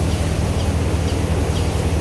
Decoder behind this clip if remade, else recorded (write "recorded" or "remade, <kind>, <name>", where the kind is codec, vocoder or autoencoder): recorded